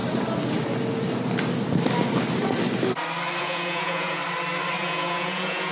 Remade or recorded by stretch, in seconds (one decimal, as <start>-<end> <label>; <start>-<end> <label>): 0.0-3.4 recorded; 3.4-4.2 remade; 4.2-4.8 recorded; 4.8-5.7 remade